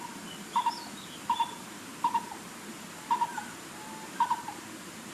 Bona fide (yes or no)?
no